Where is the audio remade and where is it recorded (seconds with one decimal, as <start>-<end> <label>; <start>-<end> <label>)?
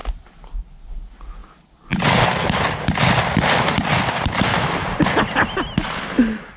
0.0-6.6 recorded